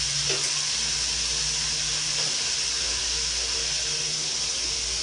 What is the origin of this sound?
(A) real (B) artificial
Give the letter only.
A